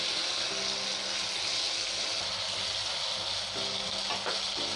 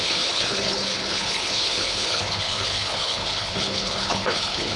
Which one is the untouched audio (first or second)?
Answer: first